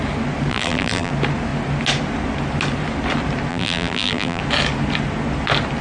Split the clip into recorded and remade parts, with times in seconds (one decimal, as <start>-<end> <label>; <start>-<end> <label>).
0.0-0.5 recorded; 0.5-1.1 remade; 1.1-3.5 recorded; 3.5-4.4 remade; 4.4-5.8 recorded